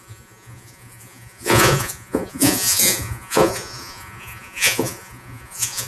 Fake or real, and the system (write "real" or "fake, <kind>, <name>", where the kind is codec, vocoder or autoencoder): fake, vocoder, Vocos